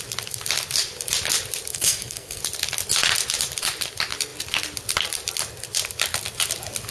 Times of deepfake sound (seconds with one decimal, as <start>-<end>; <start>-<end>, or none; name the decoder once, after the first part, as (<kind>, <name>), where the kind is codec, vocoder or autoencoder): 1.7-2.4 (codec, SNAC)